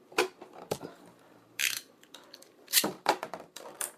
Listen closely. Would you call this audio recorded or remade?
remade